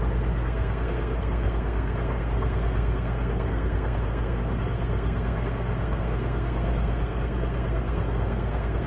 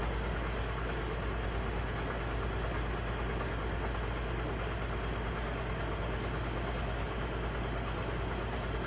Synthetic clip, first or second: first